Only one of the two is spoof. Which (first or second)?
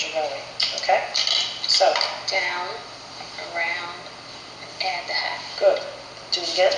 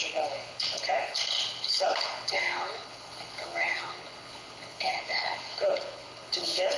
second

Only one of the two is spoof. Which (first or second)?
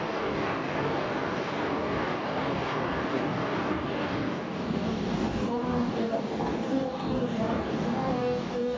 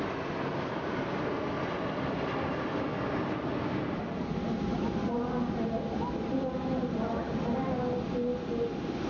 first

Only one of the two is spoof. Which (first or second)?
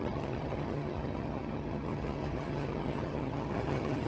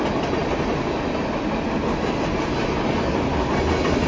first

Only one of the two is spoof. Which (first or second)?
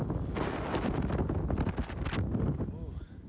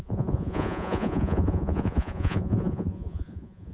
second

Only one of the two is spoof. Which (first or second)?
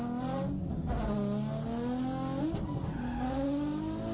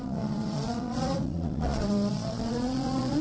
second